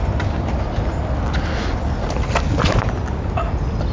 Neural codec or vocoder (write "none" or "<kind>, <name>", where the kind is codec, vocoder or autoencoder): none